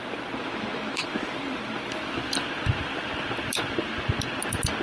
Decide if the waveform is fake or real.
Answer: fake